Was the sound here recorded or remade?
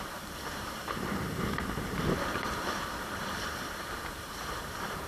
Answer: remade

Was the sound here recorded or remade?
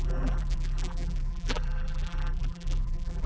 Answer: remade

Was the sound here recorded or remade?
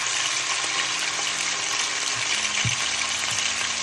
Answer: recorded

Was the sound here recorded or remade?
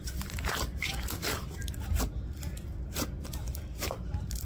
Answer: remade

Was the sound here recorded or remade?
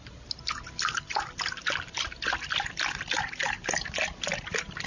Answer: recorded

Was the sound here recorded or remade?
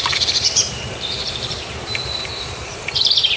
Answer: remade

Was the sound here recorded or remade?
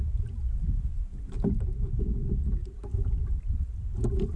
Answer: recorded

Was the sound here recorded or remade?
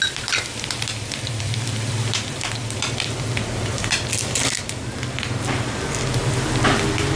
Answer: remade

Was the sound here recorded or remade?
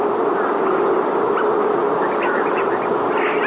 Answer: recorded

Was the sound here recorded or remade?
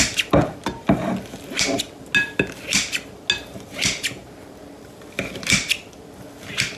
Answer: recorded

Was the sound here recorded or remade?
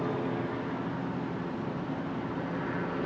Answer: recorded